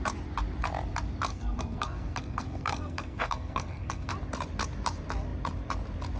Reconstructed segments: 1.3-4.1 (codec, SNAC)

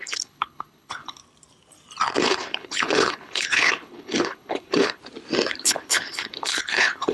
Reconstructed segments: 0.0-1.2 (codec, HILCodec); 2.2-5.0; 5.5-7.1

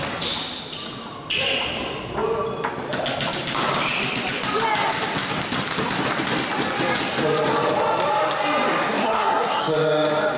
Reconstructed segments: 9.0-9.6 (codec, SNAC)

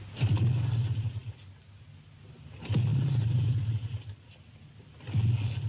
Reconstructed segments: 2.9-3.5 (vocoder, BigVGAN v2)

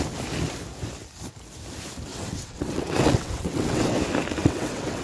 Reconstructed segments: 2.1-4.0 (vocoder, WaveNeXt); 4.4-5.0

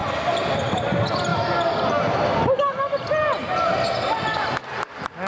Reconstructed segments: none

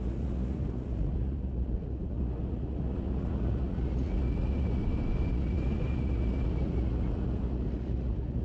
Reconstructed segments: 0.0-4.8 (vocoder, Vocos); 5.3-8.4

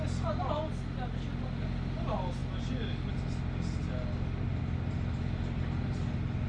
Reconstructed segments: none